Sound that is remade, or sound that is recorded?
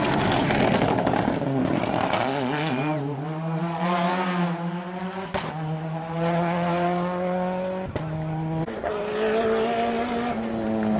recorded